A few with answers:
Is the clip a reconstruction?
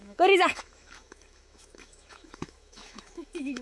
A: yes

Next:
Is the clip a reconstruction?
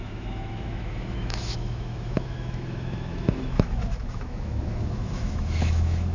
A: yes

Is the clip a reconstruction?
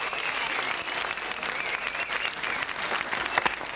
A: no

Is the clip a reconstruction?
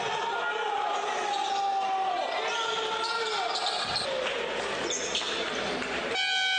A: no